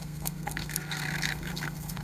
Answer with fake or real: fake